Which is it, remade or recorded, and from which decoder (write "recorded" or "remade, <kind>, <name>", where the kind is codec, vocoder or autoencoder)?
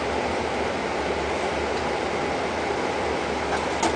recorded